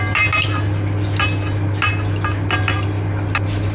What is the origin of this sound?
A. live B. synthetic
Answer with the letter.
A